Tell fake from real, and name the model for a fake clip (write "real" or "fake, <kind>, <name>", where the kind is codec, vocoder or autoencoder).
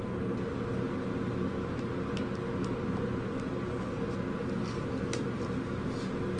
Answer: real